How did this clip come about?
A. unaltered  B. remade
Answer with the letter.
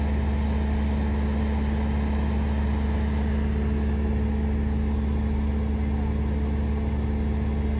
A